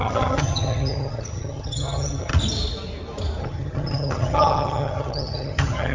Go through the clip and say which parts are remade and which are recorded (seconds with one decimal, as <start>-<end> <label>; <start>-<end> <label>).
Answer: 0.0-2.3 remade; 2.3-3.4 recorded; 3.4-5.9 remade